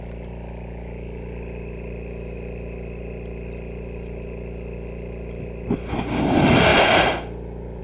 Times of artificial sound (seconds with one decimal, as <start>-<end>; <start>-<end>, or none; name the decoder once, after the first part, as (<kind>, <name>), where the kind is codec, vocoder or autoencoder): none